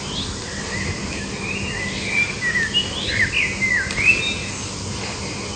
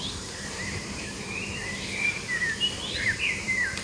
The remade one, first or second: second